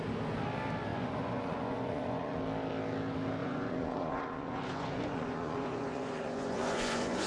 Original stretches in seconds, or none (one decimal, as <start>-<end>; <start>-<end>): 0.0-0.9; 2.4-3.4